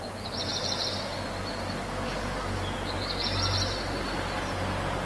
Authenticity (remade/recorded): recorded